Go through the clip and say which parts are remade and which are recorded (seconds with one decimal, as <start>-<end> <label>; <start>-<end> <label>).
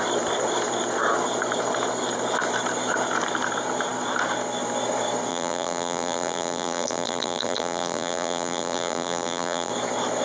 0.0-5.3 recorded; 5.3-9.7 remade; 9.7-10.2 recorded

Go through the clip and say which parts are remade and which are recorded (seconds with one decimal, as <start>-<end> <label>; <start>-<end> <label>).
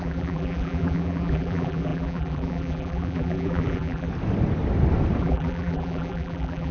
0.0-4.1 remade; 4.1-5.2 recorded; 5.2-6.7 remade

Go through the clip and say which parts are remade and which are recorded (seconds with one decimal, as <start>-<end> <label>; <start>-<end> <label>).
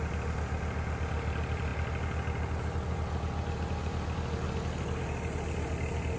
0.0-6.2 recorded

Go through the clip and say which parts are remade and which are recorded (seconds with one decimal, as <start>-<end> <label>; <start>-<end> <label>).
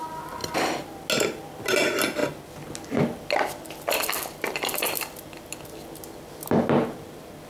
0.0-7.5 recorded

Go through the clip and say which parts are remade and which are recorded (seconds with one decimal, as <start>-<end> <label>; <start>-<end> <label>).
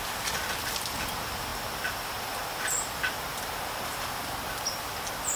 0.0-1.5 remade; 1.5-4.7 recorded; 4.7-5.4 remade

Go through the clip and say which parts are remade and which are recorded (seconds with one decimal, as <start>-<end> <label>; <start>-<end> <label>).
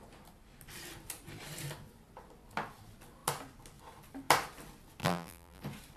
0.0-5.0 recorded; 5.0-5.6 remade; 5.6-6.0 recorded